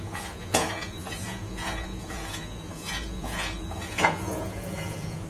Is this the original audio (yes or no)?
no